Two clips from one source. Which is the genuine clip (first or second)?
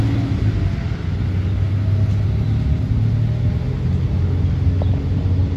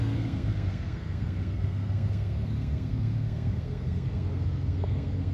first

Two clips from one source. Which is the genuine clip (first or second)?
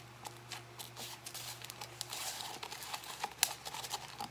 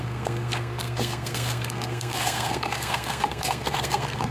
first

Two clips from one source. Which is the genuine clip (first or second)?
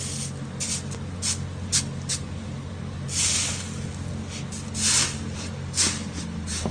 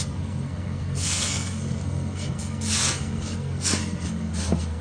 first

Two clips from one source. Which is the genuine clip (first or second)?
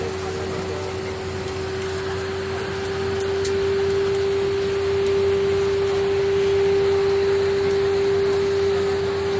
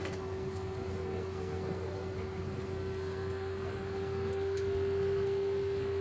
first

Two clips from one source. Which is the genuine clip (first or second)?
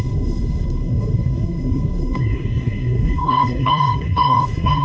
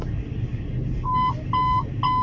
second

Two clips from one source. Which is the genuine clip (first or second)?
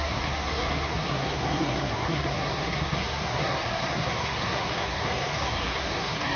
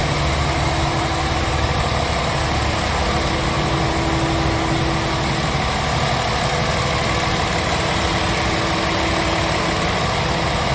second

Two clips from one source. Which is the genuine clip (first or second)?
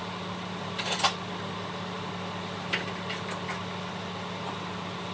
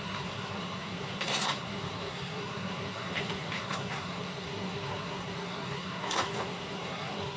first